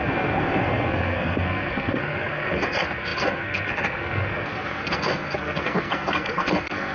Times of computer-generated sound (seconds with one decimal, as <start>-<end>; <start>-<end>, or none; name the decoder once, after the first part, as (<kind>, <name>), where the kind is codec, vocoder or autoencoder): 0.0-6.9 (codec, SNAC)